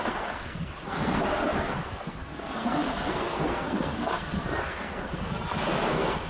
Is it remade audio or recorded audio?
remade